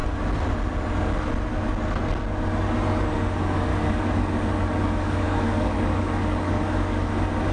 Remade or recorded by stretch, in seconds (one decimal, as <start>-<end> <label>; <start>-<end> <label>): 0.0-3.7 recorded; 3.7-7.1 remade; 7.1-7.5 recorded

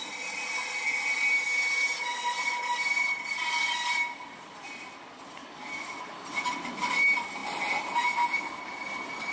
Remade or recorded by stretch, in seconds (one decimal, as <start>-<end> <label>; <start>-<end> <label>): 0.0-9.3 recorded

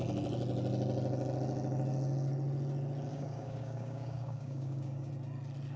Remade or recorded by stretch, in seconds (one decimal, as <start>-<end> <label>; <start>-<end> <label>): 0.0-3.1 recorded; 3.1-5.1 remade; 5.1-5.8 recorded

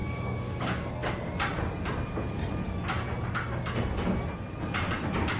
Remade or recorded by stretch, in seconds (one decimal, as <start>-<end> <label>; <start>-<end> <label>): 0.0-0.9 remade; 0.9-5.4 recorded

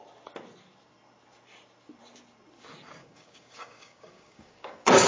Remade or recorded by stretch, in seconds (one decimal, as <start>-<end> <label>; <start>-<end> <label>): 0.0-3.0 recorded; 3.0-5.1 remade

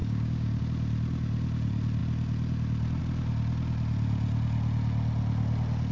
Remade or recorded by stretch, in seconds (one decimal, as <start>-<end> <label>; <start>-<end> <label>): 0.0-0.6 remade; 0.6-5.9 recorded